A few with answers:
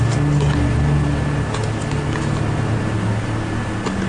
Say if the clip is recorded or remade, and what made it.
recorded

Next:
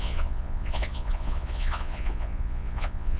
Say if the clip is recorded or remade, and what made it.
remade, vocoder, Vocos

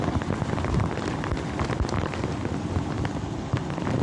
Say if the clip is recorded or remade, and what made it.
recorded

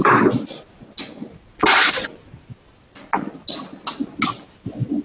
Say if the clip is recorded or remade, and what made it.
recorded